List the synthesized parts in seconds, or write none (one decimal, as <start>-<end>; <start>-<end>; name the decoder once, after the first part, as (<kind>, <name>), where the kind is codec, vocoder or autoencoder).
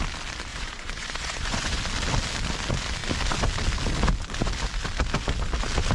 0.5-1.8 (vocoder, Vocos)